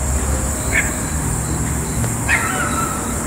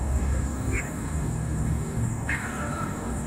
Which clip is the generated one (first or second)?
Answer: second